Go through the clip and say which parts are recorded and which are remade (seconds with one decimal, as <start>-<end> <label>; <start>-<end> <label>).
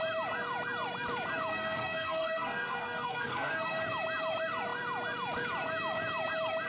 0.0-1.5 recorded; 1.5-3.8 remade; 3.8-6.7 recorded